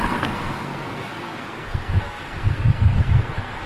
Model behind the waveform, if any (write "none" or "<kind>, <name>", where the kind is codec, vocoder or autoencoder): codec, SNAC